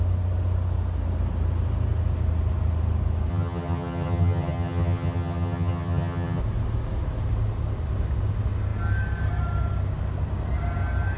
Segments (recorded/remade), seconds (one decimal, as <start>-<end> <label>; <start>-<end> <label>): 0.0-3.3 recorded; 3.3-6.4 remade; 6.4-11.2 recorded